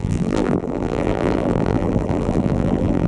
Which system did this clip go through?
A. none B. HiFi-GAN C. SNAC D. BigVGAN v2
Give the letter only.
D